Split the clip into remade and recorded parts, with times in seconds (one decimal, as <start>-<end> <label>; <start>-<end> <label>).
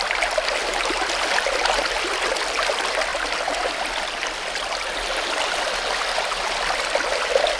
0.0-3.1 recorded; 3.1-3.7 remade; 3.7-7.6 recorded